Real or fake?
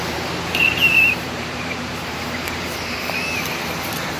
fake